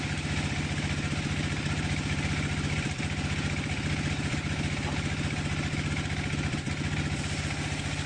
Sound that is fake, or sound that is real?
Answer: real